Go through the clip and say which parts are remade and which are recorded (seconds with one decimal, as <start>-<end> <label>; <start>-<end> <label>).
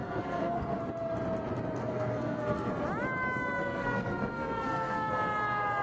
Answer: 0.0-0.8 remade; 0.8-1.8 recorded; 1.8-2.7 remade; 2.7-3.6 recorded; 3.6-5.1 remade; 5.1-5.8 recorded